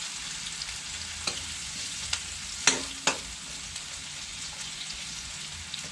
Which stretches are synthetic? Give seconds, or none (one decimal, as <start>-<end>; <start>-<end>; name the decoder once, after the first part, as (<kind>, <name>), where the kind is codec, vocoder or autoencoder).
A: 1.6-2.1 (vocoder, Vocos); 4.3-5.3